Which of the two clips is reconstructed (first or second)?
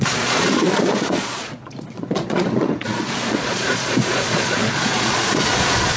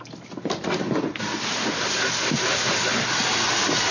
first